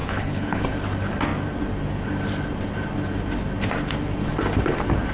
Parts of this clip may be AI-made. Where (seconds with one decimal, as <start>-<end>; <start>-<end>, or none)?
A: 0.0-0.6